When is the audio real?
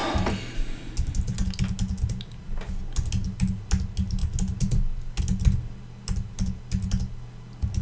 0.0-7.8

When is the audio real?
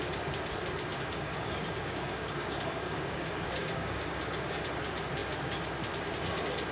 0.0-0.9; 4.6-6.7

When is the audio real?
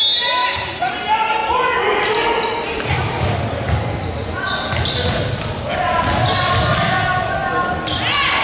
0.0-8.4